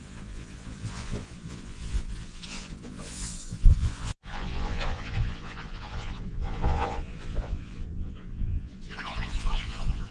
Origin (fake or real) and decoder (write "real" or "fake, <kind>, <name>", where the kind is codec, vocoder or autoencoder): fake, vocoder, Vocos